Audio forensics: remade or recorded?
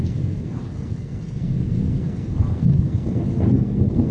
remade